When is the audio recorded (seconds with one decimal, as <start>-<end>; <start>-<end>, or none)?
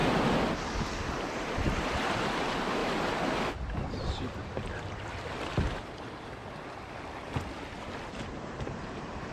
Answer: 0.0-1.8; 2.8-6.0; 6.4-8.1